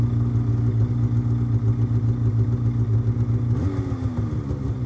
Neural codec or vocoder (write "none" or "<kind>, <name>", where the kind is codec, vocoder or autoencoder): none